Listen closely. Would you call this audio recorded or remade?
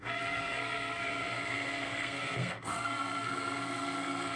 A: remade